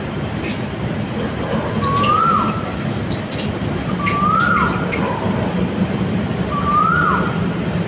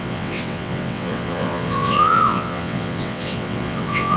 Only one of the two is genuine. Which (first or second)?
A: first